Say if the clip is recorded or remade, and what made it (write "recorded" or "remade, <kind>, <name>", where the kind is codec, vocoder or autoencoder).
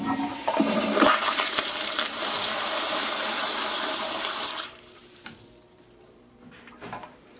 remade, vocoder, BigVGAN v2